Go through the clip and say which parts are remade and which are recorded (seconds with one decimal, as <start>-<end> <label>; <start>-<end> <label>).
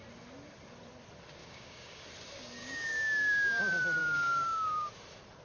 0.0-1.4 recorded; 1.4-2.0 remade; 2.0-2.6 recorded; 2.6-3.6 remade; 3.6-4.0 recorded; 4.0-4.9 remade; 4.9-5.4 recorded